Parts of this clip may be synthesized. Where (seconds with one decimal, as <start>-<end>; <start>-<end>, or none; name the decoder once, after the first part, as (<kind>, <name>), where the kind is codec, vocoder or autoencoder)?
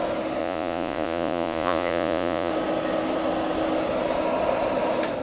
0.4-2.5 (vocoder, Vocos)